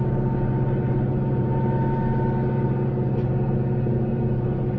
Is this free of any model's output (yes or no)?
yes